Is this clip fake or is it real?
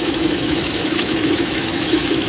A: fake